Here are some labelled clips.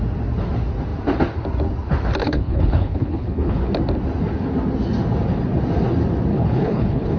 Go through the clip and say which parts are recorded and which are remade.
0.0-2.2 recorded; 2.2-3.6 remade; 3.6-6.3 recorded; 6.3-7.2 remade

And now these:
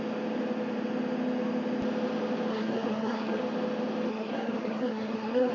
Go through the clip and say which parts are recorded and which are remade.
0.0-2.5 recorded; 2.5-3.4 remade; 3.4-4.1 recorded; 4.1-5.5 remade